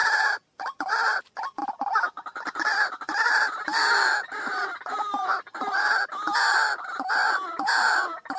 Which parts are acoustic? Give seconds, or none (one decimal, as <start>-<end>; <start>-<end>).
1.2-8.4